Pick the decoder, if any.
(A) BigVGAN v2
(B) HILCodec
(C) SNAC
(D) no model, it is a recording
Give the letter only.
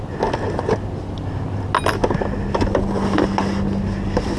D